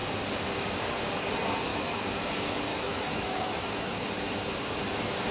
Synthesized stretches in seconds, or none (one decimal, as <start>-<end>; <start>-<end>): 1.7-2.3; 2.7-4.0